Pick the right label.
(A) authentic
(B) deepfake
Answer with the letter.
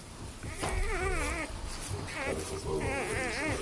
A